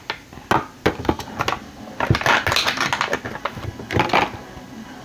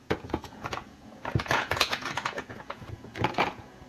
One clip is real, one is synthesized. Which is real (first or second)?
first